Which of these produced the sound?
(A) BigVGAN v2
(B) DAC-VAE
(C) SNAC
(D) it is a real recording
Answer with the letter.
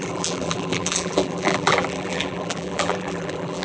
A